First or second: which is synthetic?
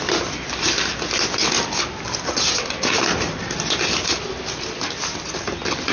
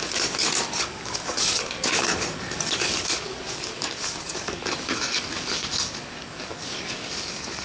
second